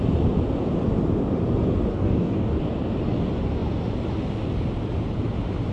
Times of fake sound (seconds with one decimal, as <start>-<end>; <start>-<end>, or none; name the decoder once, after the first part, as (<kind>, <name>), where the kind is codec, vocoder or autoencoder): 1.9-2.6 (codec, DAC)